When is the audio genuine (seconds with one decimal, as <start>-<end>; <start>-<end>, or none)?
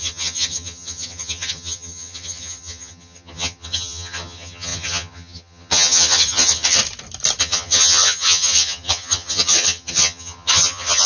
6.8-7.4